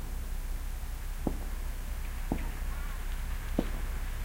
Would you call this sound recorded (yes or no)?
yes